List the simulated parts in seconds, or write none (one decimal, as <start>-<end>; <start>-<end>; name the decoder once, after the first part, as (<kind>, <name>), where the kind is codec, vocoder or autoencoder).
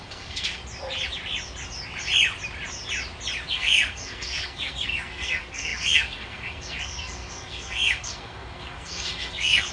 0.0-0.6 (codec, SNAC); 3.5-9.7